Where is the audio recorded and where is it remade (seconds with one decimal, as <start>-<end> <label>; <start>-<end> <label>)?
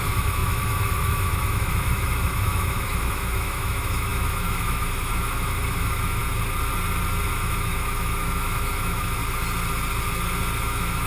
0.0-6.2 remade; 6.2-7.3 recorded; 7.3-9.2 remade; 9.2-10.6 recorded; 10.6-11.1 remade